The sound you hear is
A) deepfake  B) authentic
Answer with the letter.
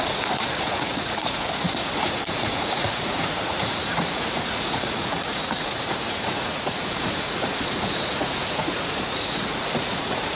A